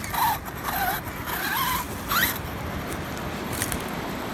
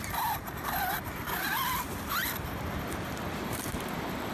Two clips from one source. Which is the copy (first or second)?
second